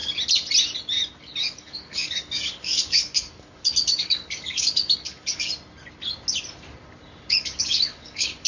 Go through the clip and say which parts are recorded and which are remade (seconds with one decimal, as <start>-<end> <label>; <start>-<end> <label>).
0.0-1.4 recorded; 1.4-5.5 remade; 5.5-7.3 recorded; 7.3-8.5 remade